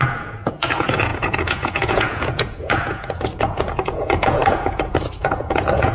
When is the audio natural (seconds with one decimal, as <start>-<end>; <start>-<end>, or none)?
none